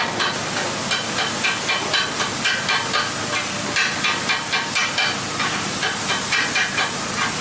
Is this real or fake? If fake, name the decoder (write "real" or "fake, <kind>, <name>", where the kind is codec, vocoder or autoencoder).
real